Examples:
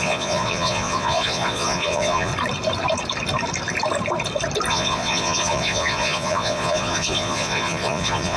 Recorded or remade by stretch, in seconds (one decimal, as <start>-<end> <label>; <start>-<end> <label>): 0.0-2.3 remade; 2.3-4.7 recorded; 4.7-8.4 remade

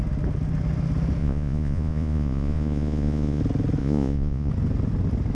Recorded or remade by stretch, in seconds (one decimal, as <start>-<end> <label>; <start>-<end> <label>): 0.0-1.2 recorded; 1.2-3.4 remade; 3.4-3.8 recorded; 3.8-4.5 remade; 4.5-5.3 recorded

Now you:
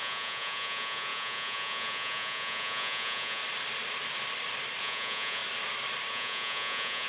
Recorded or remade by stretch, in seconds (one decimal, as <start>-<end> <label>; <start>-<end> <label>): 0.0-3.4 remade; 3.4-4.8 recorded; 4.8-5.4 remade; 5.4-6.1 recorded; 6.1-7.1 remade